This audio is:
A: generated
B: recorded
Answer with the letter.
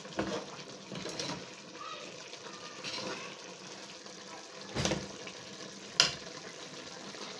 B